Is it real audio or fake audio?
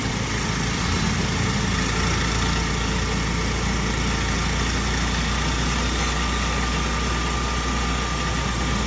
real